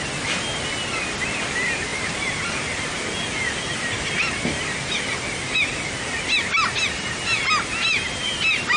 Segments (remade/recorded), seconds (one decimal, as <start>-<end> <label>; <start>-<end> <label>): 0.0-8.8 recorded